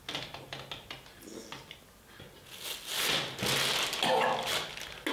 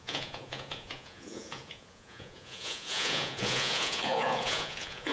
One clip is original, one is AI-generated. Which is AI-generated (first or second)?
second